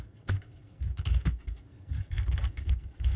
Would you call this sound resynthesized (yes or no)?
yes